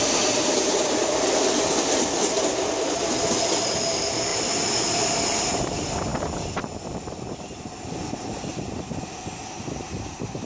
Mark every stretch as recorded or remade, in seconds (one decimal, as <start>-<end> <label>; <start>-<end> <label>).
0.0-10.5 recorded